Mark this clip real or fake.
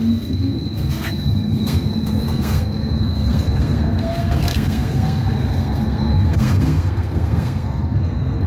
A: fake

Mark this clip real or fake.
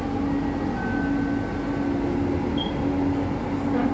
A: real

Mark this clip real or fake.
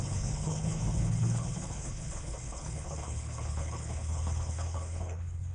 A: fake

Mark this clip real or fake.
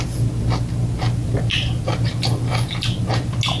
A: real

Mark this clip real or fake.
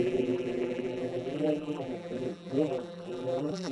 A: fake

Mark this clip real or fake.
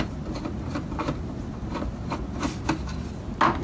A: real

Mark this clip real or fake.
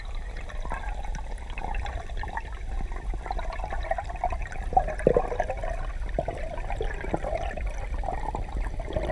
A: fake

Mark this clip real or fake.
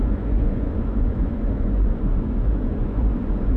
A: fake